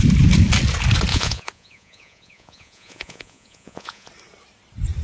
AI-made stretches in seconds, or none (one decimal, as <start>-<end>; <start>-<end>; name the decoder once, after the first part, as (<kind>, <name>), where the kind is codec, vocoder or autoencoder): 1.1-4.1 (vocoder, Vocos)